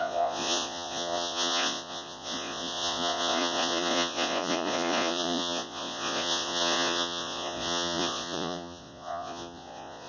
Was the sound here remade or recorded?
remade